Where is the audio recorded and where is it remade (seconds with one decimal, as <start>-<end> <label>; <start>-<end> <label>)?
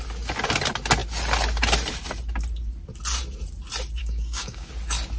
0.0-4.0 recorded; 4.0-4.7 remade; 4.7-5.2 recorded